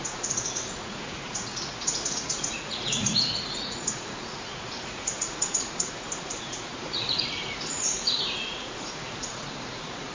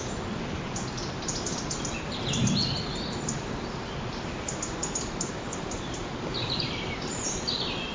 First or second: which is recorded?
second